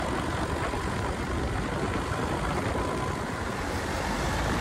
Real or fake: real